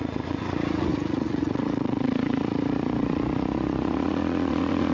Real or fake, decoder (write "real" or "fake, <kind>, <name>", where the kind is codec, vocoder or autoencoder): fake, vocoder, Vocos